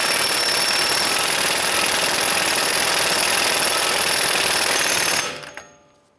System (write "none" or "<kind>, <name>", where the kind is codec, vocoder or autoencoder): none